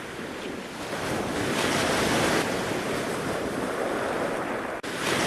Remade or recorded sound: recorded